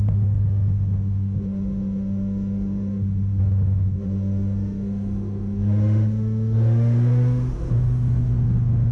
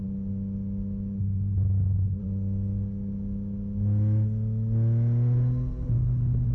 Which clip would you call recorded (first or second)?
second